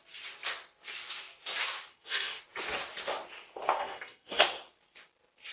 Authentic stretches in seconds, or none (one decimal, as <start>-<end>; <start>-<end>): 0.0-1.9; 2.4-3.8; 4.4-5.5